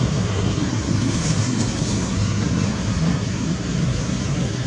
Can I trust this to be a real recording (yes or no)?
no